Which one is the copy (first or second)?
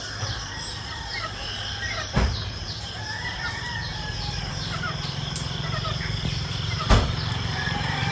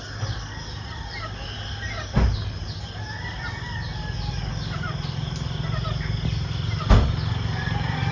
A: first